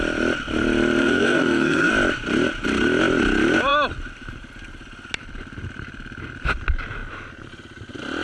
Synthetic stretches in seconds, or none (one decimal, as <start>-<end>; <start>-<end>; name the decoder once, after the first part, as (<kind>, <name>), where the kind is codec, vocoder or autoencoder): 1.0-1.9 (codec, SNAC)